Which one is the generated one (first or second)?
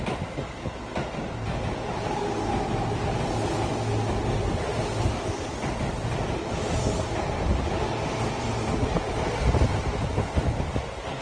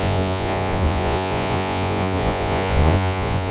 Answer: second